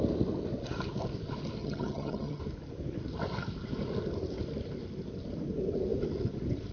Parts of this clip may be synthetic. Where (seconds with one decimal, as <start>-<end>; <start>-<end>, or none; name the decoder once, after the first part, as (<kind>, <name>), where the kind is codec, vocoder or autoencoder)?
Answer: 1.6-2.4 (vocoder, HiFi-GAN)